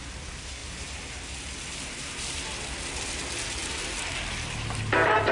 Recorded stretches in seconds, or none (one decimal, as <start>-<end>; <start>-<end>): 0.0-5.3